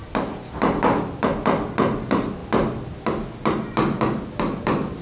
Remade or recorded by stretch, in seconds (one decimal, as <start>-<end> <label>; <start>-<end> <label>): 0.0-5.0 recorded